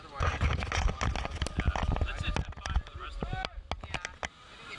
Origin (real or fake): real